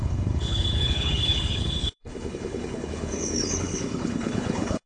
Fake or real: fake